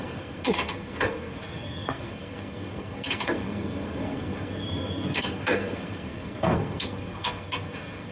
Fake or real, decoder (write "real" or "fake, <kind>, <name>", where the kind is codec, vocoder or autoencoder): fake, codec, SNAC